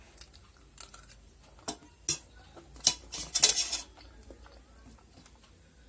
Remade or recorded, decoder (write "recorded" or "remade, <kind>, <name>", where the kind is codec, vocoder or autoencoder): recorded